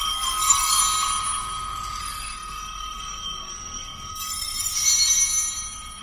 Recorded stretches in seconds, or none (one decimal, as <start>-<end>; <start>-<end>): 0.8-2.0; 4.7-6.0